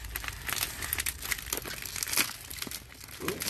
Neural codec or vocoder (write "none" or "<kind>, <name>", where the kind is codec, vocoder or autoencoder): none